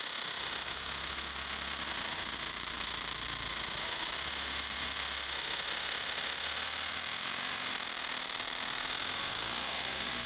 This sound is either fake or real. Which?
fake